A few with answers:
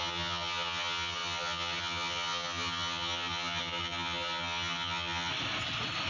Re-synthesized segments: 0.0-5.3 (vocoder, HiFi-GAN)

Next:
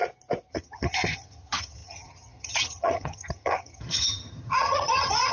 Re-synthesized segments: 0.5-5.3 (vocoder, HiFi-GAN)

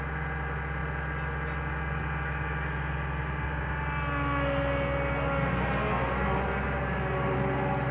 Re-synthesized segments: none

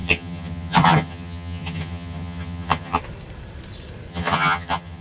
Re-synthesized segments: 0.0-3.0 (vocoder, HiFi-GAN); 4.1-5.0

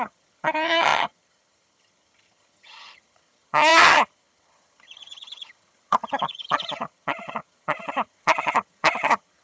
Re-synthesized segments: 0.0-9.4 (vocoder, HiFi-GAN)

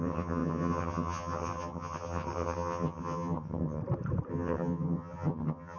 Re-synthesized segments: 0.0-3.8 (vocoder, HiFi-GAN); 4.3-5.8